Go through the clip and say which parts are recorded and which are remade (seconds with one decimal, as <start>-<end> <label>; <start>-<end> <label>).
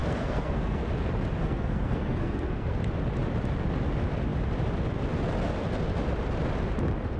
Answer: 0.0-0.9 remade; 0.9-1.4 recorded; 1.4-2.8 remade; 2.8-7.2 recorded